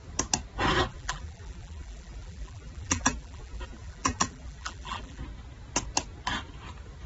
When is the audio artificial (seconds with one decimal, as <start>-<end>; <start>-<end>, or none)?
0.9-5.2